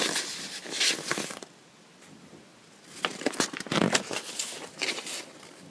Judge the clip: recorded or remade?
recorded